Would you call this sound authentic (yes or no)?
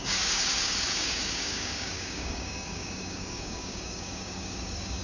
no